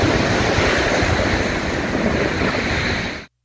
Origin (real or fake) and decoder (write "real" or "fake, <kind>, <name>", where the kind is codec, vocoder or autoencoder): real